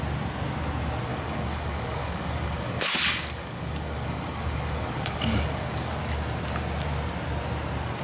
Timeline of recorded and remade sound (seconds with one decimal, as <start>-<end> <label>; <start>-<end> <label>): 0.0-1.1 recorded; 1.1-5.9 remade; 5.9-8.0 recorded